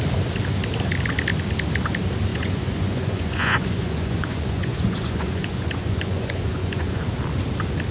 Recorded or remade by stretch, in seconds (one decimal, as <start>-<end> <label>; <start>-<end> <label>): 0.0-2.3 recorded; 2.3-7.0 remade; 7.0-7.9 recorded